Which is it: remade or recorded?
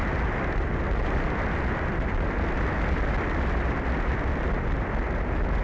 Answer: recorded